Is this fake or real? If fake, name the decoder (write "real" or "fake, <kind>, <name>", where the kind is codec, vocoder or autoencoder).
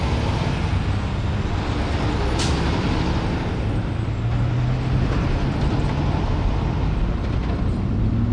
real